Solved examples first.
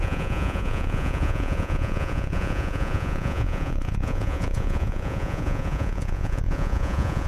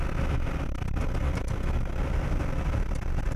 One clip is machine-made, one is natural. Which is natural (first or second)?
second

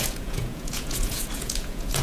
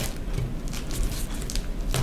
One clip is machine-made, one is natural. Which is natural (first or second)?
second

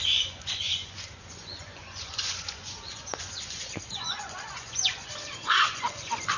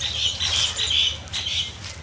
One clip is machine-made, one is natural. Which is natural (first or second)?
second